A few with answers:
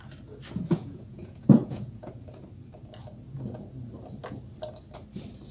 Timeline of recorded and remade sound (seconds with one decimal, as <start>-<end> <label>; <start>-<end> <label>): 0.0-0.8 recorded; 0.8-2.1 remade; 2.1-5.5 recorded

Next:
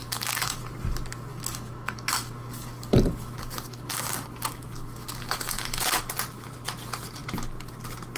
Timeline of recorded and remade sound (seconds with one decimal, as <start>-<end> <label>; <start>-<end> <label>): 0.0-0.6 remade; 0.6-1.3 recorded; 1.3-6.0 remade; 6.0-8.2 recorded

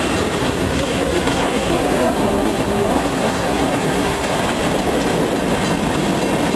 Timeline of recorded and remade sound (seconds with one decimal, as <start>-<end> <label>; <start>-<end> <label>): 0.0-0.4 recorded; 0.4-4.4 remade; 4.4-6.6 recorded